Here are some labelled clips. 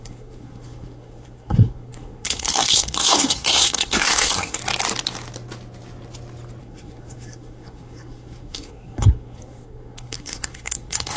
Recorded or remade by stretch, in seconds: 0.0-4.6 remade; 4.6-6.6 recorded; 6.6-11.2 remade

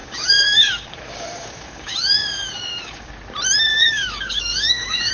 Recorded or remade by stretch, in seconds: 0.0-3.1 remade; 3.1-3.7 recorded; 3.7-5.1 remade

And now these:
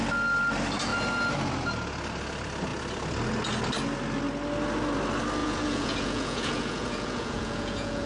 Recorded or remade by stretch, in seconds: 0.0-5.4 recorded; 5.4-8.1 remade

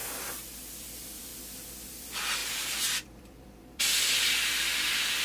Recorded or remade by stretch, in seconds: 0.0-0.7 recorded; 0.7-1.3 remade; 1.3-1.9 recorded; 1.9-5.2 remade